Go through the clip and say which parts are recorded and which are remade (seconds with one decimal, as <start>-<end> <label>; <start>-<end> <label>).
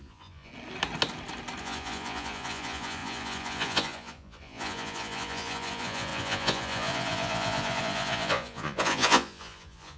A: 0.0-0.5 remade; 0.5-1.6 recorded; 1.6-10.0 remade